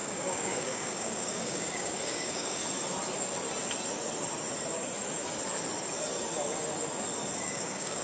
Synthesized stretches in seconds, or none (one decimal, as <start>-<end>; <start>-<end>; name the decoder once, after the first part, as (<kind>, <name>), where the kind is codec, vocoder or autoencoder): 0.0-2.6 (codec, DAC); 7.4-8.0